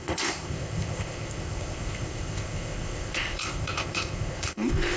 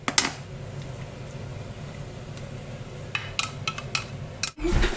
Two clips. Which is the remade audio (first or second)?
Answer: first